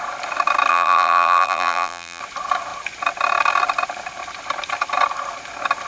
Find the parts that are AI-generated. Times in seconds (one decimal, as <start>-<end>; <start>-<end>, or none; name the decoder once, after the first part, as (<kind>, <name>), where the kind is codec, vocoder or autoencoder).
0.7-2.2 (vocoder, BigVGAN v2)